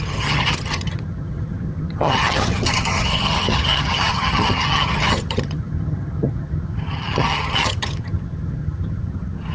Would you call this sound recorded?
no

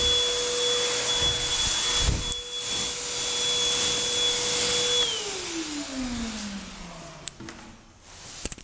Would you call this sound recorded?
yes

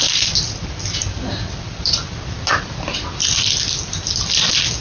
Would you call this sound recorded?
yes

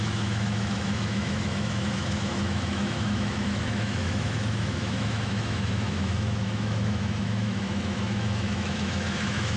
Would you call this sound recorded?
no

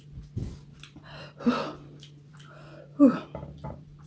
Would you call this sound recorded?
yes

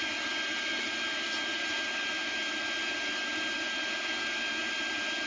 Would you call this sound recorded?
yes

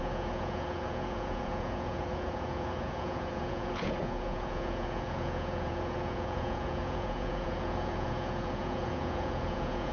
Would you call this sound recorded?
no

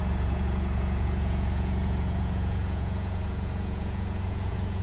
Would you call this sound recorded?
no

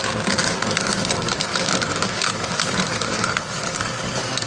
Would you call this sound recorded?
no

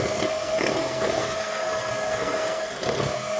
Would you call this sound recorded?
no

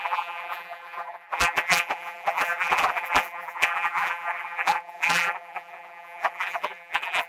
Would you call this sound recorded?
no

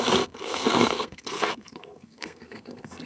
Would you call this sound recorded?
no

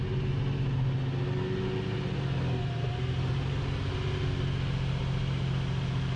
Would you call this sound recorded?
yes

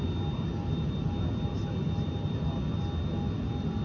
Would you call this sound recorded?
yes